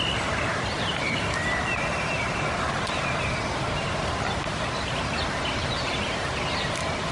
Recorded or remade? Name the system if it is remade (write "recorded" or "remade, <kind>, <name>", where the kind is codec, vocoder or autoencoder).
recorded